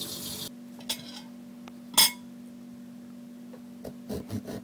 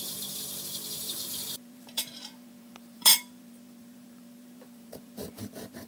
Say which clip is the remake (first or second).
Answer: second